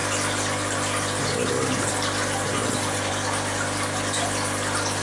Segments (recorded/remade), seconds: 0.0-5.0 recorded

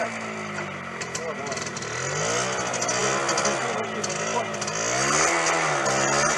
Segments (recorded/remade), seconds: 0.0-6.4 recorded

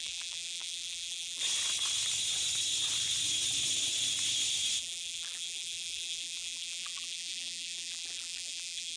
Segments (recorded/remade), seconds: 0.0-1.4 remade; 1.4-4.8 recorded; 4.8-9.0 remade

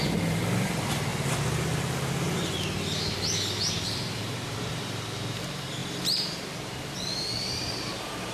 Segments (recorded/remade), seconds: 0.0-1.1 remade; 1.1-3.7 recorded; 3.7-8.3 remade

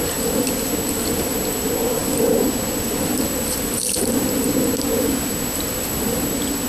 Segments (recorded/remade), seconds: 0.0-6.7 recorded

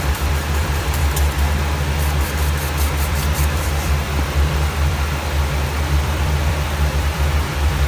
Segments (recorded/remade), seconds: 0.0-1.0 remade; 1.0-3.1 recorded; 3.1-7.9 remade